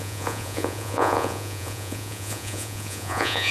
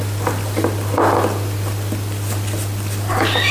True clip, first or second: second